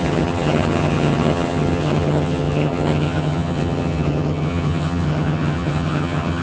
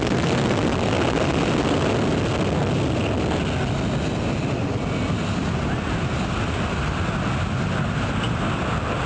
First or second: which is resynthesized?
first